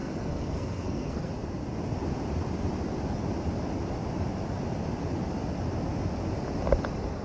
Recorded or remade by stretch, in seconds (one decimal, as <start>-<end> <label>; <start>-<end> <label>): 0.0-1.3 remade; 1.3-7.2 recorded